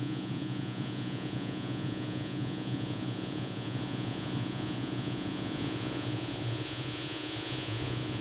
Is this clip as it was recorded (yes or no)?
no